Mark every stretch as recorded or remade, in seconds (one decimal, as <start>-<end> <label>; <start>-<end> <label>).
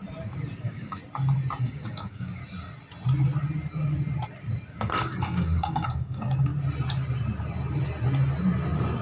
0.0-0.6 recorded; 0.6-1.0 remade; 1.0-1.6 recorded; 1.6-2.4 remade; 2.4-4.7 recorded; 4.7-6.5 remade; 6.5-9.0 recorded